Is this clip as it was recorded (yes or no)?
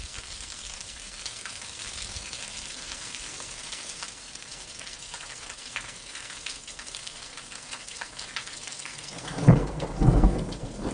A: no